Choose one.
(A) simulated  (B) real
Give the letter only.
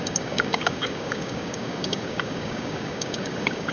A